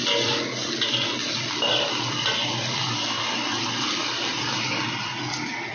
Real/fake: real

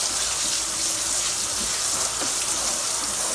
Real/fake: real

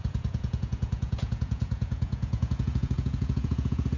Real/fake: fake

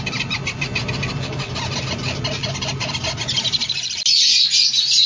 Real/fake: real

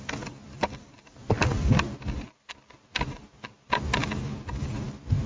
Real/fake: real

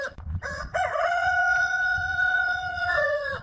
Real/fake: fake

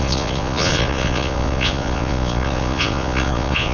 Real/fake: fake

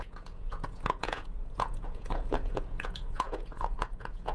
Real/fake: fake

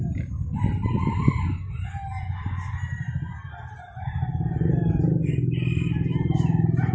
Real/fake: real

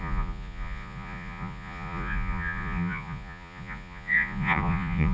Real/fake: fake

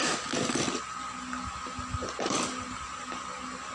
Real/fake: real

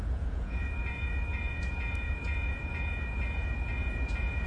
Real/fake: fake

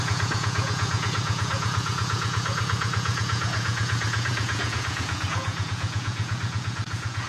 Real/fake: fake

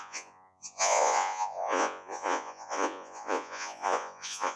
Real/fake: fake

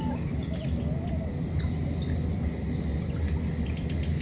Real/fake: real